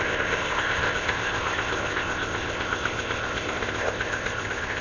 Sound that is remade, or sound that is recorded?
remade